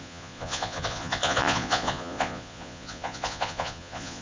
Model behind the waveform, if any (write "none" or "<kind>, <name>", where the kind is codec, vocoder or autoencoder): vocoder, Vocos